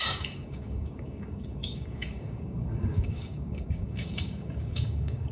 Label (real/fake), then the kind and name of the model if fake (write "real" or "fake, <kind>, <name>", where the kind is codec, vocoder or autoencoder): fake, codec, DAC